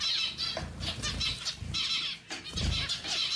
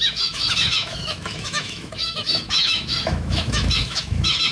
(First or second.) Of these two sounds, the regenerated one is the second